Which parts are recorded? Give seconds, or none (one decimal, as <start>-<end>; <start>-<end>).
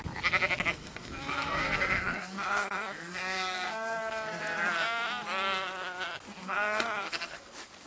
0.0-0.7; 4.4-6.4; 7.5-7.9